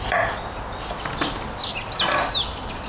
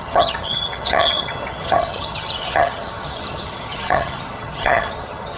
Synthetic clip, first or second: second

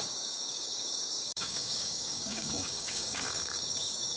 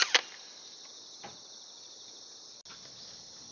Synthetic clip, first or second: first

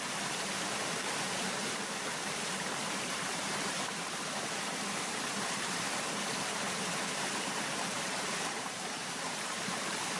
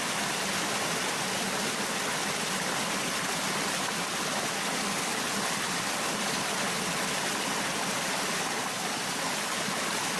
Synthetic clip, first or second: first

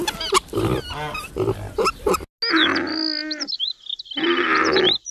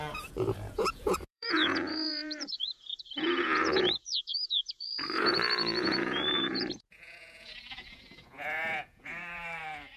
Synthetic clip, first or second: second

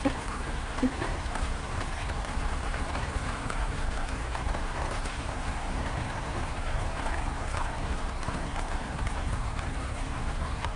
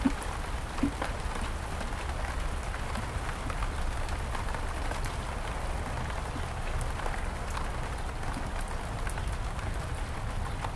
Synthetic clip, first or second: first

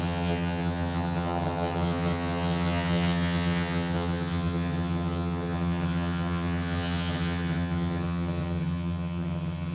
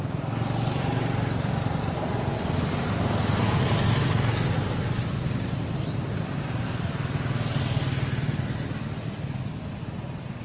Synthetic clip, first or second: first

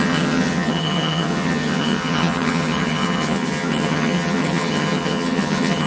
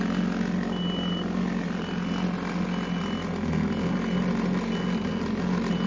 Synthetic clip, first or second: first